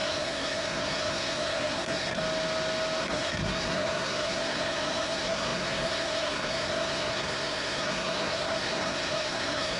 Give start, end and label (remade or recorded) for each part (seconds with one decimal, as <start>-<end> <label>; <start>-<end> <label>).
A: 0.0-2.2 remade; 2.2-3.0 recorded; 3.0-9.8 remade